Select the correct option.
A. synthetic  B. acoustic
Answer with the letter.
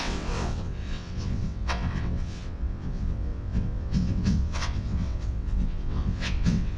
A